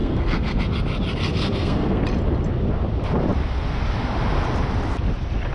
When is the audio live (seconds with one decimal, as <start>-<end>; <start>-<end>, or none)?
0.6-1.3; 2.0-5.5

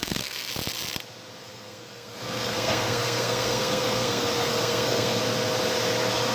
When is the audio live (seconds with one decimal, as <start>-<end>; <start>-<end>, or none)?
0.5-1.4; 5.2-6.3

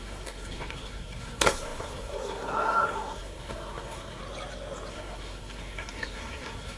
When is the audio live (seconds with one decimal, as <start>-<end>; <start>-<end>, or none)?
4.2-4.9